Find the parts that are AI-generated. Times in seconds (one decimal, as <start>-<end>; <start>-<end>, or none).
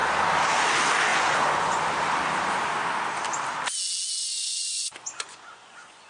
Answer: 1.1-1.8; 4.2-6.1